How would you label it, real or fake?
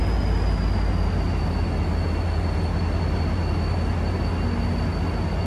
real